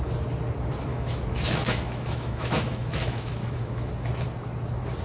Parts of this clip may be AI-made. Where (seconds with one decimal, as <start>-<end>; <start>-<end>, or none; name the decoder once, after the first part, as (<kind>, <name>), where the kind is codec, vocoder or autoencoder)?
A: 0.9-3.9 (autoencoder, DAC-VAE)